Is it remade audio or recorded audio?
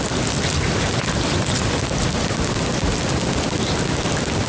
recorded